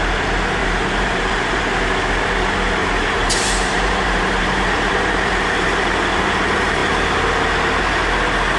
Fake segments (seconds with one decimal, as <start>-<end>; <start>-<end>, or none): 0.6-1.6; 2.8-6.2

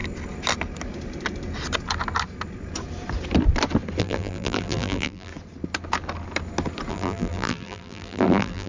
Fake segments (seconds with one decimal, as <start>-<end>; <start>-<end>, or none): 4.0-5.3; 6.9-8.7

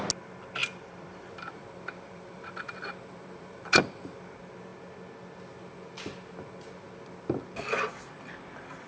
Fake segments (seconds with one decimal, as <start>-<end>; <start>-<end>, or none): 0.6-3.8

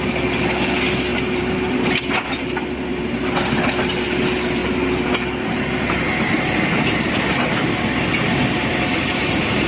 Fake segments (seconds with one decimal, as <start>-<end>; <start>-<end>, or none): 1.1-1.9; 2.9-3.4